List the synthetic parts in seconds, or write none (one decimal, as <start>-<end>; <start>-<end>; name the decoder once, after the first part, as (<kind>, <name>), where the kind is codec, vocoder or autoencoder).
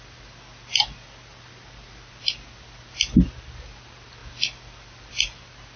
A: none